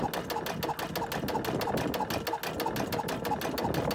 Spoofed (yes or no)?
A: no